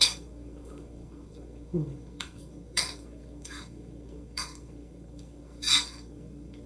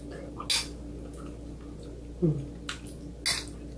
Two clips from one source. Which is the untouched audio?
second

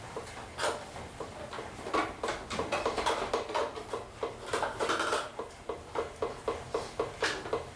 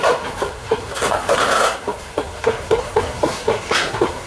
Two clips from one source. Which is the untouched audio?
first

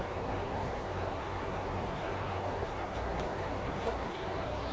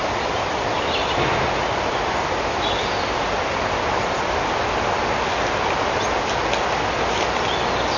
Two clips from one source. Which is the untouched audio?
second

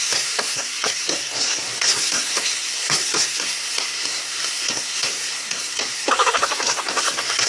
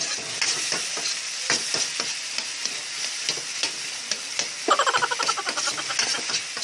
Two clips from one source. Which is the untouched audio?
second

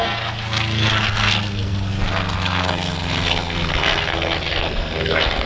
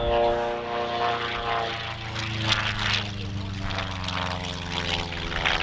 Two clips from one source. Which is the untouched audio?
second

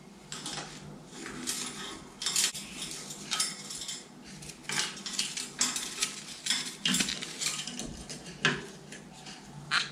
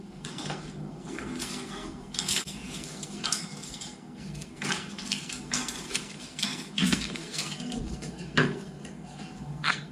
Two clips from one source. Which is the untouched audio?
first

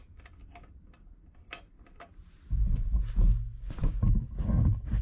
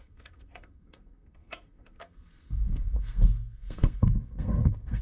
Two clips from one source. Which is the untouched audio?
first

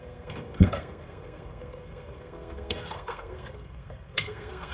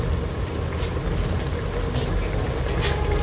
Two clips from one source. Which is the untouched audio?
second